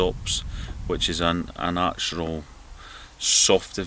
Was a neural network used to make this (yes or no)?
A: no